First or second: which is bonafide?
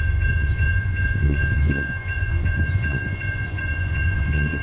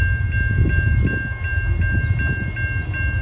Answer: second